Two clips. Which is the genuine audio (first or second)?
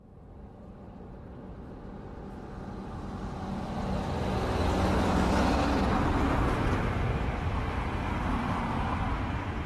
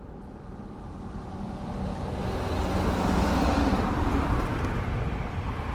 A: first